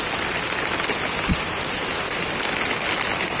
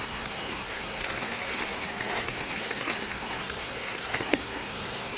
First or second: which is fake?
second